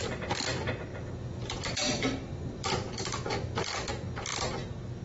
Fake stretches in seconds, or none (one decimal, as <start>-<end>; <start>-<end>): 0.9-3.9